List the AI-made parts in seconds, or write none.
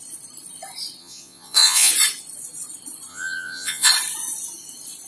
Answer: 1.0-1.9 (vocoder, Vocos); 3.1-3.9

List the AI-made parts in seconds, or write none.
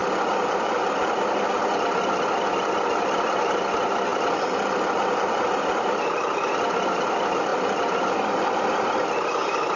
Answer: none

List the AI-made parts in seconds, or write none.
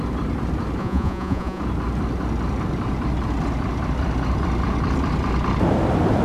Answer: 0.8-1.6 (vocoder, Vocos)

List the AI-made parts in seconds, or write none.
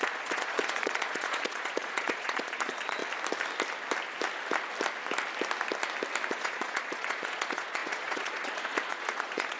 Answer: 0.0-3.0 (vocoder, Vocos); 6.3-9.6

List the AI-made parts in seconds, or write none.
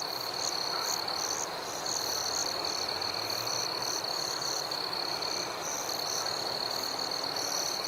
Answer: none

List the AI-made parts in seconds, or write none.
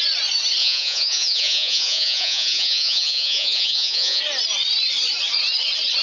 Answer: 0.6-4.2 (vocoder, Vocos)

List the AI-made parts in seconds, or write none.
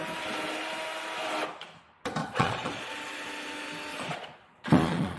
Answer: 2.2-2.9 (vocoder, Vocos); 3.9-5.2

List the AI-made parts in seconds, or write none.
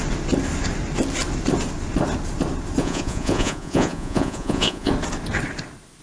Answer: 2.8-4.9 (vocoder, Vocos)